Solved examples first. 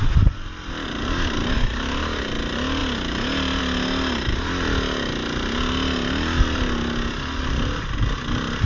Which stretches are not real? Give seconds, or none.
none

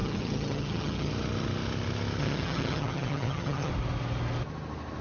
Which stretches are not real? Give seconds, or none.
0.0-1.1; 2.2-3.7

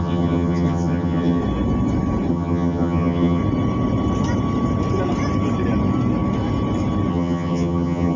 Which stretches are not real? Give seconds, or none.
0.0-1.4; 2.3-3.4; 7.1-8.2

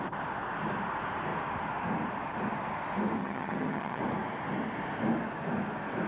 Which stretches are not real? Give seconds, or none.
3.2-4.0